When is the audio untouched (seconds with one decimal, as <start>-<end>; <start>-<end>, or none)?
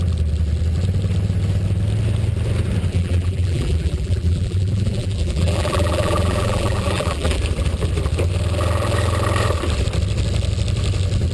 0.0-2.9; 7.4-11.3